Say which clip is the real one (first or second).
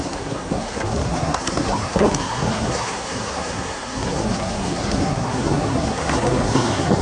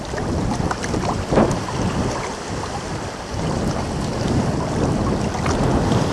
second